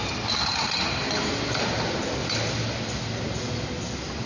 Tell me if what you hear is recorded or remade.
recorded